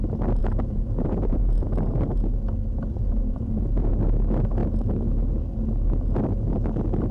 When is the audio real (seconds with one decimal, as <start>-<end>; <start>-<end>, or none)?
0.0-0.4; 1.7-3.0; 3.9-7.1